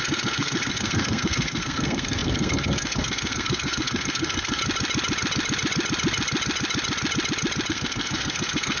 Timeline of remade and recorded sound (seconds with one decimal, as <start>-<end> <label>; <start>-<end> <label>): 0.0-4.6 remade; 4.6-7.7 recorded; 7.7-8.8 remade